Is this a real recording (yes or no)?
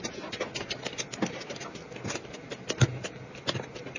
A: yes